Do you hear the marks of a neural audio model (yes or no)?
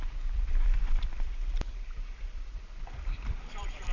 yes